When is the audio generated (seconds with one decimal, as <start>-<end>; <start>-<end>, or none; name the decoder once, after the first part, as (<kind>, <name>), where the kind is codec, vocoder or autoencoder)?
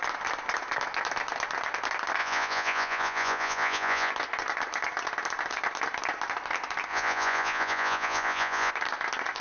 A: 2.2-4.1 (vocoder, Vocos); 6.9-8.7